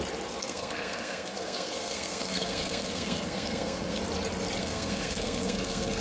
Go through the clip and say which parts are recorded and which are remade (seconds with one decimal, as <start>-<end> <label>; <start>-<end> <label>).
0.0-0.4 recorded; 0.4-4.0 remade; 4.0-4.6 recorded; 4.6-6.0 remade